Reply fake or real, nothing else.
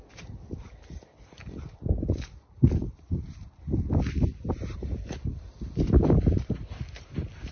real